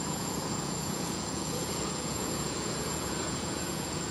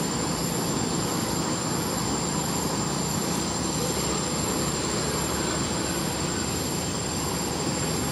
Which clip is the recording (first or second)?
second